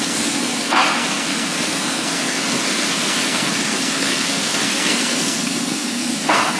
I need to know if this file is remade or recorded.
remade